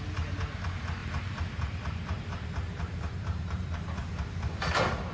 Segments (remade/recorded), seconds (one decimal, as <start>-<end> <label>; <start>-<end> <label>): 0.0-1.0 recorded; 1.0-4.1 remade; 4.1-5.1 recorded